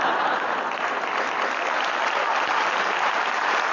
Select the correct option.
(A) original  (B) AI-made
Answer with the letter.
A